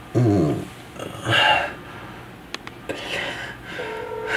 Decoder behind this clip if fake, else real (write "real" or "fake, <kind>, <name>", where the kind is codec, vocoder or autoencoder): real